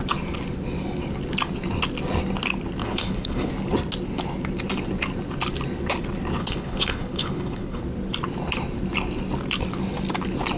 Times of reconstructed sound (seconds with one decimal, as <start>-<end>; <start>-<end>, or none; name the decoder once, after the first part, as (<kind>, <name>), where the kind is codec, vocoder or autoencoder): 2.8-3.5 (codec, HILCodec); 6.4-7.8

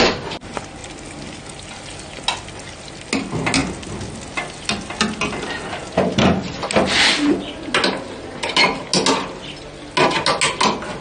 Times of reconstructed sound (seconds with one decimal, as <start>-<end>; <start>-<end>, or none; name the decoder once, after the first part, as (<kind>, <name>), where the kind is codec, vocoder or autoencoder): none

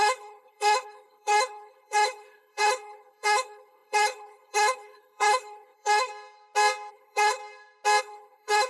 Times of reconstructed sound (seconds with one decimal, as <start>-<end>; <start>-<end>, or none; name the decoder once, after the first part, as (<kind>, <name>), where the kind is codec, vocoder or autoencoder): 0.0-6.1 (codec, HILCodec); 6.9-7.4; 8.0-8.7